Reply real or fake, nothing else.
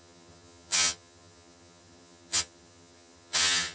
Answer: fake